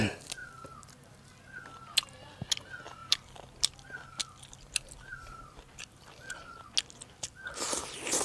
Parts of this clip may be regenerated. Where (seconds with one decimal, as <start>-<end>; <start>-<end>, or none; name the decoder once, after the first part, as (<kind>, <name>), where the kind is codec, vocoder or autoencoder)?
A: 0.4-1.4 (vocoder, BigVGAN v2); 3.0-6.7